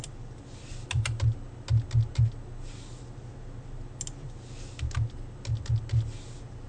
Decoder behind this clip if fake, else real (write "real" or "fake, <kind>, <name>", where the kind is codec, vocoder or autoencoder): real